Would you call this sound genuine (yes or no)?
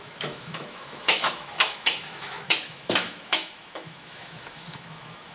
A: no